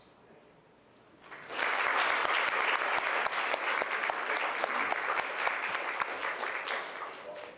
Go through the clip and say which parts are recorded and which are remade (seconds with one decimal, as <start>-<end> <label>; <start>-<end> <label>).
0.0-7.6 recorded

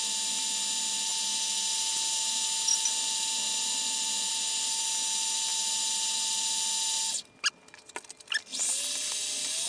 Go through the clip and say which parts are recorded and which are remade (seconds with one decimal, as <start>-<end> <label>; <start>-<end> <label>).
0.0-9.7 recorded